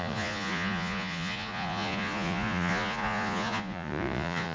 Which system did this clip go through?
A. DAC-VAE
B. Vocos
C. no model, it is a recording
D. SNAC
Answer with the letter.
B